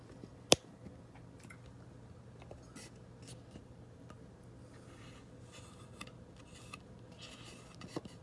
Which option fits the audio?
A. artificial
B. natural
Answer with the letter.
B